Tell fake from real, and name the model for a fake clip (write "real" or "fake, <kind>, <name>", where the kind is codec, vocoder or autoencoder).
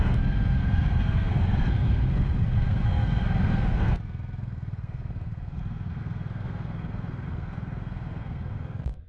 fake, codec, SNAC